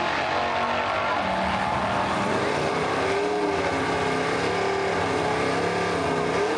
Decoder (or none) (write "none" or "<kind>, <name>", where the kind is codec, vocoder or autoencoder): none